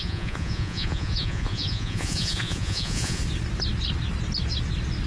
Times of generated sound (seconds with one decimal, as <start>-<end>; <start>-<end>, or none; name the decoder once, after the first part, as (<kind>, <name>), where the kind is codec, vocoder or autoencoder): 0.0-3.2 (vocoder, Vocos)